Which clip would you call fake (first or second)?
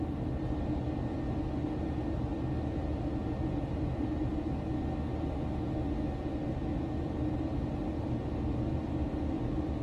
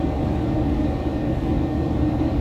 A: second